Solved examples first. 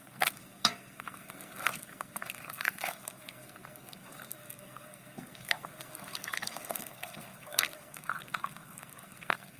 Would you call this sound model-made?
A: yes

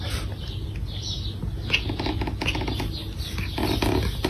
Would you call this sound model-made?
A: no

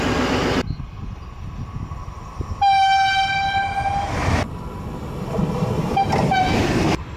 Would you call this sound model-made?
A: no